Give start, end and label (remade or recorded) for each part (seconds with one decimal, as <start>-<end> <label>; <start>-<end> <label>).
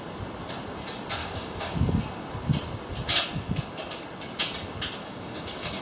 0.0-1.2 recorded; 1.2-2.0 remade; 2.0-5.0 recorded; 5.0-5.8 remade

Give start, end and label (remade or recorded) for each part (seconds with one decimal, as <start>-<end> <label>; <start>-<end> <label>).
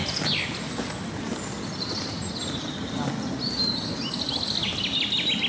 0.0-5.5 recorded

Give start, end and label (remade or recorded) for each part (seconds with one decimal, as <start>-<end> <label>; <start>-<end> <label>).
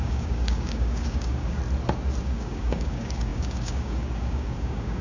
0.0-1.6 remade; 1.6-2.2 recorded; 2.2-5.0 remade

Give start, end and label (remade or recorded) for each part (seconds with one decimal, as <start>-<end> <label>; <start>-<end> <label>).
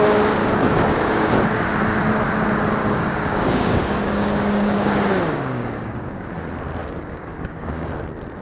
0.0-0.4 recorded; 0.4-1.3 remade; 1.3-2.8 recorded; 2.8-6.3 remade; 6.3-6.8 recorded; 6.8-7.9 remade; 7.9-8.4 recorded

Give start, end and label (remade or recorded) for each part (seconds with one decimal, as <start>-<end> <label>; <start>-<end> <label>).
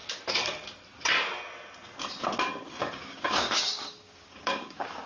0.0-2.8 recorded; 2.8-5.1 remade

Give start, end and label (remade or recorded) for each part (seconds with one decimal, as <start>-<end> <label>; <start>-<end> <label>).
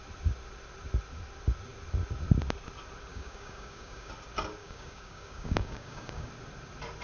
0.0-3.1 recorded; 3.1-4.1 remade; 4.1-4.6 recorded; 4.6-6.3 remade; 6.3-7.0 recorded